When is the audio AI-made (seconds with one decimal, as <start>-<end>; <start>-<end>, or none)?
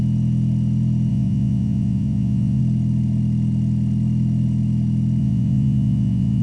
1.1-2.6; 5.2-6.4